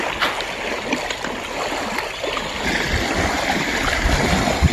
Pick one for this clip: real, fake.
real